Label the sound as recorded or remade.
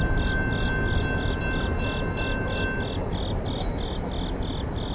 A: recorded